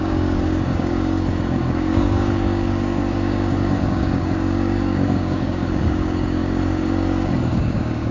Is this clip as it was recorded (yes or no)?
no